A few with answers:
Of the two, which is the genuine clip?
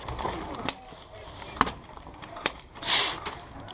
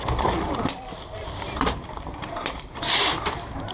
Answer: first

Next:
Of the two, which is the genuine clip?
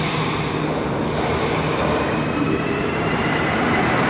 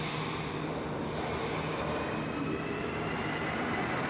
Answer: second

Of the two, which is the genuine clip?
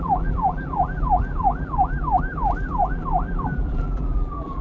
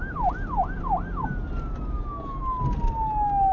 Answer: second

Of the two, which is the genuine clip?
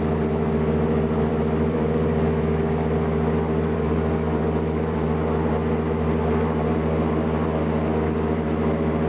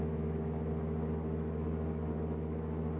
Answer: second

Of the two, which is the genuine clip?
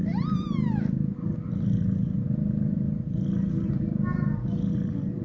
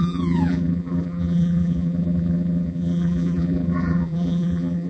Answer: first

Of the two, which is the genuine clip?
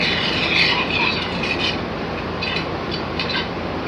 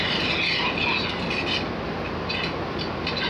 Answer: second